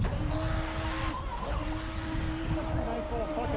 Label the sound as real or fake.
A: real